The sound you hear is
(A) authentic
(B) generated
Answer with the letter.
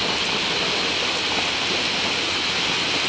A